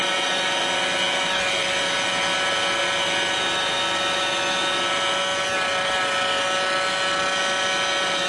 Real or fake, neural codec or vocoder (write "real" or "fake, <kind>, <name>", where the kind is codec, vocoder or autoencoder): real